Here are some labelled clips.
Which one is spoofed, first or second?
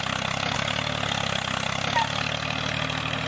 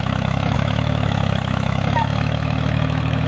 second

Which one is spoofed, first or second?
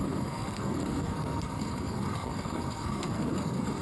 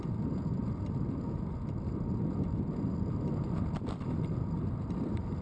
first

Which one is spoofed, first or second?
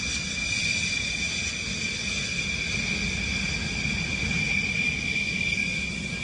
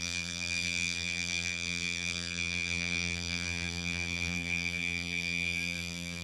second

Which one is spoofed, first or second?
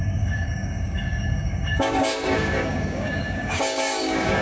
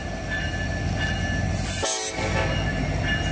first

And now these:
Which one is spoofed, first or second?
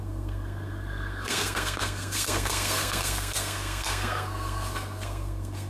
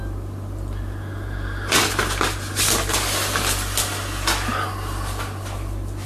first